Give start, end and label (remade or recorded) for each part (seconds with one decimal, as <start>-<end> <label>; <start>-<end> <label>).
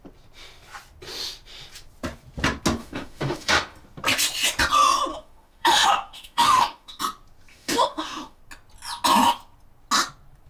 0.0-2.8 recorded; 2.8-3.5 remade; 3.5-5.1 recorded; 5.1-7.0 remade; 7.0-7.5 recorded; 7.5-8.4 remade; 8.4-10.5 recorded